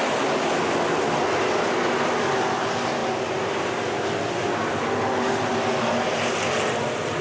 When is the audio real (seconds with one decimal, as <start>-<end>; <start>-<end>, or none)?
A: 0.0-7.2